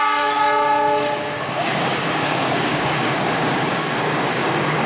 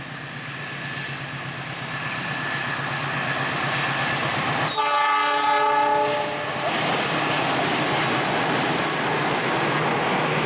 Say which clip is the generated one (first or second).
first